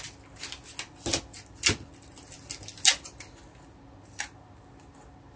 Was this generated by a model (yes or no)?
no